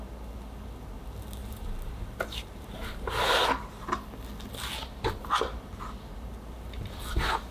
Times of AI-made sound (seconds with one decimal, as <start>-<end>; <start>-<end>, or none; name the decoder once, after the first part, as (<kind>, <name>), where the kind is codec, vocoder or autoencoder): 1.4-3.1 (vocoder, BigVGAN v2)

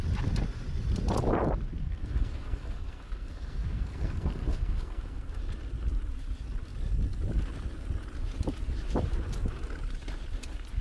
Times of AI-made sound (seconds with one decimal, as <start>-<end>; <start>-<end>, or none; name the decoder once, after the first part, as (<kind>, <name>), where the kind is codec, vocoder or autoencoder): 1.8-5.4 (codec, SNAC)

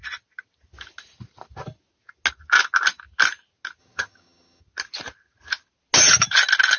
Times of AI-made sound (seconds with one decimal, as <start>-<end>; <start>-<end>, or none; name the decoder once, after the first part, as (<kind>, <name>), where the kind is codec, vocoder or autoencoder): 3.8-4.6 (vocoder, HiFi-GAN)

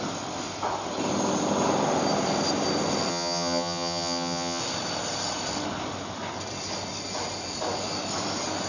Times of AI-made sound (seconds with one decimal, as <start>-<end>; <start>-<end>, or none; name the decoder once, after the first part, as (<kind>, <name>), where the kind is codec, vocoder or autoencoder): 3.1-4.6 (vocoder, HiFi-GAN)

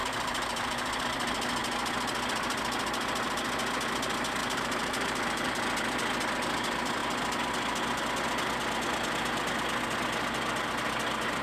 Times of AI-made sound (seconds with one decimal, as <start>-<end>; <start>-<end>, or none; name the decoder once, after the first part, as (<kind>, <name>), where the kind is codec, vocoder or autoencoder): 0.0-1.0 (vocoder, BigVGAN v2); 4.4-5.5

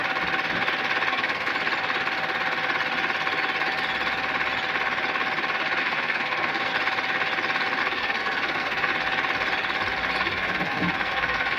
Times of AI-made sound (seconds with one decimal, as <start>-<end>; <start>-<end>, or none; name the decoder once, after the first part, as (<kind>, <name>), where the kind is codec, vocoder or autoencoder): 1.1-1.5 (codec, SNAC); 5.8-6.7; 7.8-8.9; 10.2-11.6

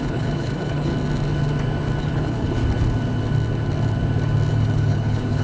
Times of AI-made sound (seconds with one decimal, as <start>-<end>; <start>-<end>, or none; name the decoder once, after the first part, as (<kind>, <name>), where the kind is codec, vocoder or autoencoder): 0.0-0.9 (codec, HILCodec); 2.0-2.6; 4.5-5.4

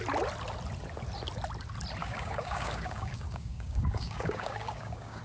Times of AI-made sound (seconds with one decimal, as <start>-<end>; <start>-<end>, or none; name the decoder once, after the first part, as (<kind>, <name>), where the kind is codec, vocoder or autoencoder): 2.0-5.2 (codec, DAC)